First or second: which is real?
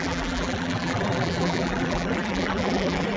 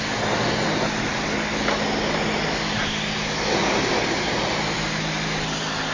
second